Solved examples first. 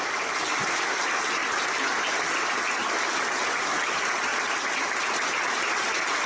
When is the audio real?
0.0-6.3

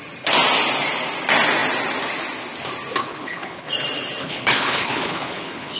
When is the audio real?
0.0-3.0; 3.7-4.2

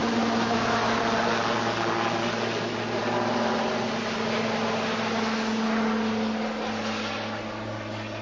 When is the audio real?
1.0-8.2

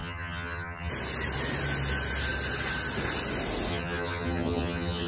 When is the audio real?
0.9-3.7

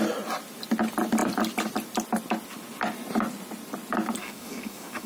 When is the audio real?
0.0-4.2

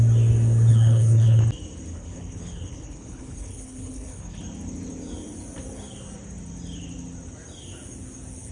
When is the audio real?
0.0-0.7; 1.4-1.9; 4.4-8.5

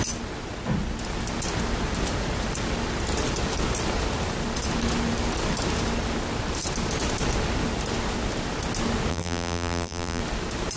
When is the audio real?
0.0-9.1; 10.2-10.8